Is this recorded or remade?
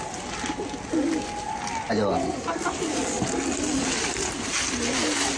recorded